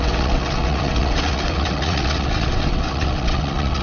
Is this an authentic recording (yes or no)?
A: no